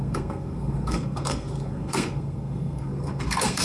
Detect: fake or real fake